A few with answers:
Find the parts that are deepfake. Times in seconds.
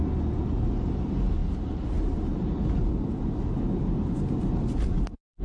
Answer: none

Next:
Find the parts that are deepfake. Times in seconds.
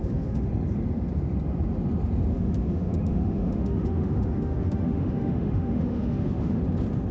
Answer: 0.0-0.5 (autoencoder, DAC-VAE); 2.3-6.6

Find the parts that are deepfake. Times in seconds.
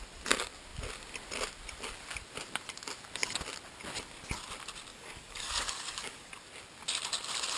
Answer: 4.9-6.3 (codec, DAC)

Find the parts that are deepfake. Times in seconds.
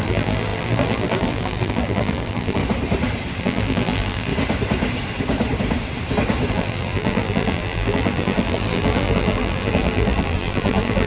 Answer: 0.0-2.6 (vocoder, BigVGAN v2); 3.4-4.3; 6.5-11.1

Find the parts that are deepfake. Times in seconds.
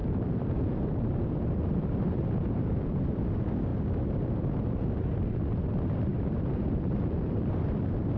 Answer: 0.0-3.2 (vocoder, BigVGAN v2); 6.1-7.5